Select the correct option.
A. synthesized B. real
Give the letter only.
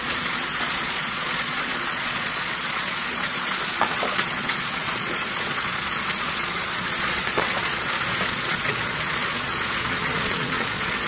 A